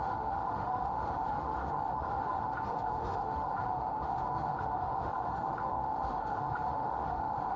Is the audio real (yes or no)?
no